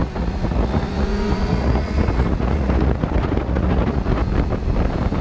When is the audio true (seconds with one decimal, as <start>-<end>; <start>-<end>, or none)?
4.2-5.2

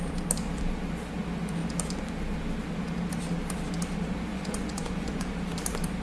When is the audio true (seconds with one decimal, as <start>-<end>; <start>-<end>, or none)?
0.0-4.3; 5.3-6.0

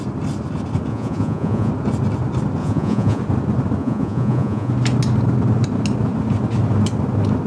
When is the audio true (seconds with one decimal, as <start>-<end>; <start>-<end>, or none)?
0.0-0.9; 1.7-2.6; 3.2-3.8; 4.7-7.5

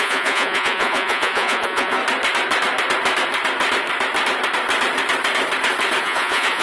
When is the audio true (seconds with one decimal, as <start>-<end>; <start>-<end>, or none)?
2.0-6.0